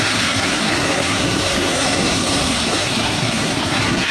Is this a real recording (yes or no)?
no